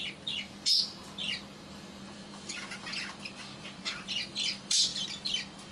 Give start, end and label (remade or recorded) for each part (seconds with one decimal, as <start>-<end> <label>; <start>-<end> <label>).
0.0-4.9 remade; 4.9-5.7 recorded